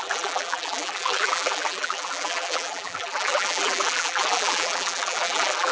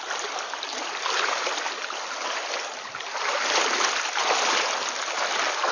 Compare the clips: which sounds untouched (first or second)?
second